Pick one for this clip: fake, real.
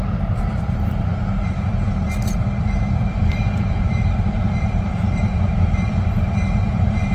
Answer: fake